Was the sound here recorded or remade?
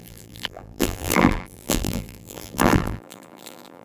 remade